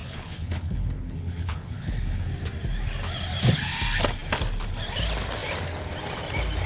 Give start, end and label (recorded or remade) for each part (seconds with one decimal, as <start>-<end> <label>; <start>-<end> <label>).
0.0-2.3 remade; 2.3-6.7 recorded